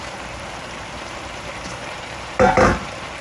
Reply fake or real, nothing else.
fake